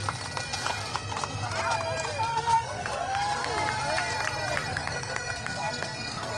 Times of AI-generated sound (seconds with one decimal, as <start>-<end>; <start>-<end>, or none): 2.3-3.5; 4.7-6.4